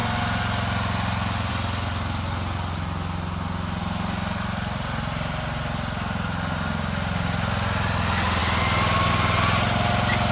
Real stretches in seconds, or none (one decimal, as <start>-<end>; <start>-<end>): 0.0-10.3